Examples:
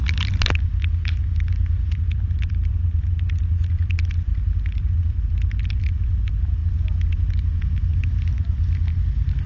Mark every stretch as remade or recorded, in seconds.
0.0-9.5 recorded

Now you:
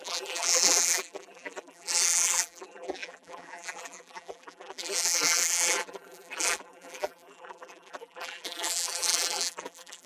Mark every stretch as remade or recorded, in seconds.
0.0-10.1 remade

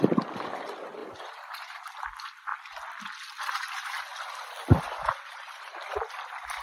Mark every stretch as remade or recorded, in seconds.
0.0-1.0 recorded; 1.0-1.8 remade; 1.8-6.6 recorded